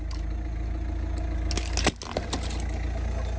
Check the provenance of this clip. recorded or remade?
recorded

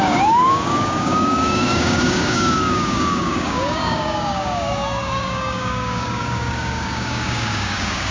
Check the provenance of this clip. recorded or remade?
remade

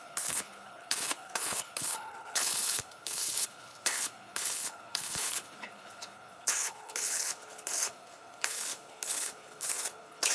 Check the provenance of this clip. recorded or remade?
remade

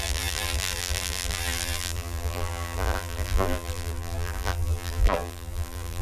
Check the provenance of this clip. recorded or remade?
remade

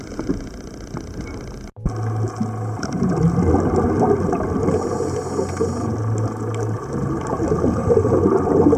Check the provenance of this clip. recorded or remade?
recorded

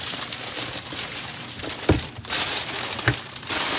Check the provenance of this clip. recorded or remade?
recorded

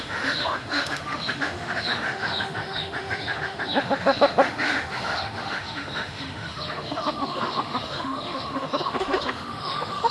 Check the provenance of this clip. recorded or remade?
remade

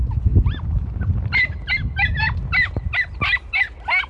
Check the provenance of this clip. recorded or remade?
recorded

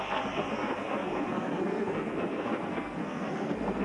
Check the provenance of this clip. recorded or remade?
remade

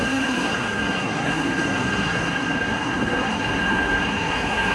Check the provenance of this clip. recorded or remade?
remade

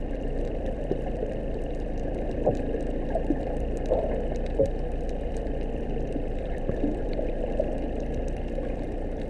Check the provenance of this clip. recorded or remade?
remade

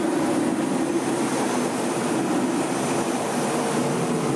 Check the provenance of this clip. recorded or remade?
recorded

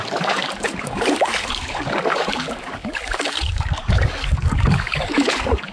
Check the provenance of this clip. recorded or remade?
remade